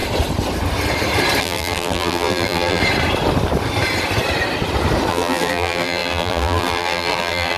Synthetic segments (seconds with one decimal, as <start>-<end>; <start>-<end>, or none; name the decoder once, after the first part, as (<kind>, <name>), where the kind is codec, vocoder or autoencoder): 1.4-2.8 (vocoder, BigVGAN v2); 5.1-7.6